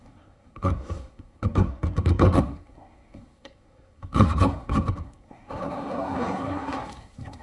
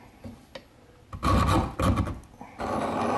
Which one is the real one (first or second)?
second